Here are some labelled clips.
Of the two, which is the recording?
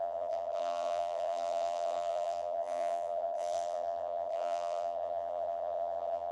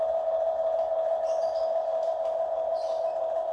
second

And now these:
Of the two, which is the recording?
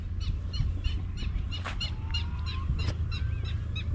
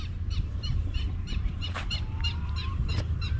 first